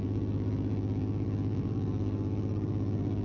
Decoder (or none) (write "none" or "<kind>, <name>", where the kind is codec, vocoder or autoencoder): vocoder, BigVGAN v2